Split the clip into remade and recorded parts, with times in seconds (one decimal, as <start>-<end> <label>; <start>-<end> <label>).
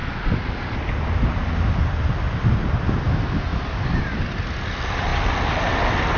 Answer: 0.0-6.2 recorded